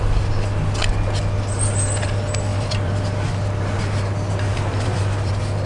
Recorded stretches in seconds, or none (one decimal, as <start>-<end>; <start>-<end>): 0.0-2.5; 3.3-4.5; 5.3-5.7